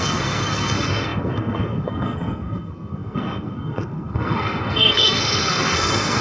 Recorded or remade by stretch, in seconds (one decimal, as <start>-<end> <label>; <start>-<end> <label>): 0.0-6.2 remade